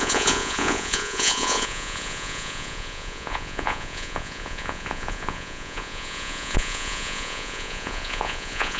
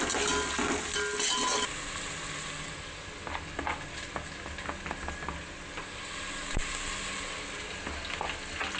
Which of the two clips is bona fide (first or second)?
second